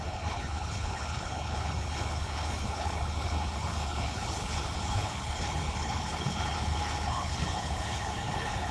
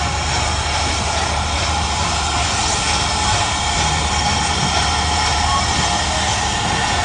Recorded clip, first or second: second